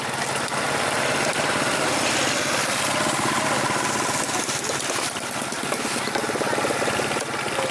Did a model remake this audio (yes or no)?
no